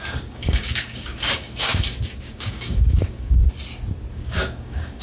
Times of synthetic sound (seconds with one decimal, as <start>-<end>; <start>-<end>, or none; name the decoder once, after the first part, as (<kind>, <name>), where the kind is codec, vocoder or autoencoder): 0.0-3.4 (codec, DAC); 4.1-5.0